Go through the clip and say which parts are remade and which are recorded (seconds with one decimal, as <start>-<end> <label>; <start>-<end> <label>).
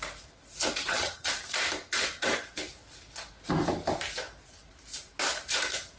0.0-0.8 recorded; 0.8-1.3 remade; 1.3-6.0 recorded